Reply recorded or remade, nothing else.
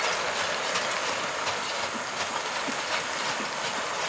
recorded